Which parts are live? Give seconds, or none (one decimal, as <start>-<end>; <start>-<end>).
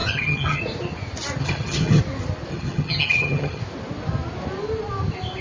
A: 0.6-1.4; 2.0-2.5; 3.6-5.4